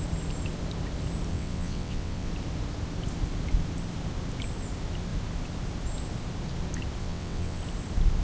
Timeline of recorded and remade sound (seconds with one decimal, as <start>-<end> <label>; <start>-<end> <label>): 0.0-1.3 recorded; 1.3-2.3 remade; 2.3-7.0 recorded; 7.0-7.6 remade; 7.6-8.2 recorded